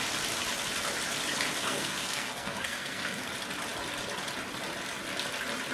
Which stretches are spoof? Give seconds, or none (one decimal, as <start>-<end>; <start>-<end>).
1.6-3.3